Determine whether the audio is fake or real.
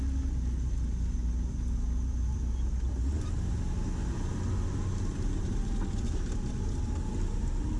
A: real